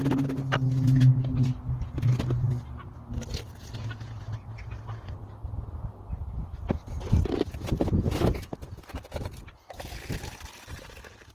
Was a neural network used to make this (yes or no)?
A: no